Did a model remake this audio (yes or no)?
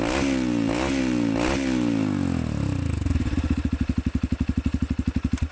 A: no